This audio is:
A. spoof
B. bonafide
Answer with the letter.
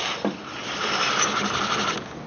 B